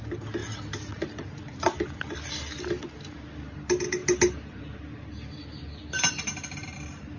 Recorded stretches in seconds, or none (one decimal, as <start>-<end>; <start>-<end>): 0.0-7.2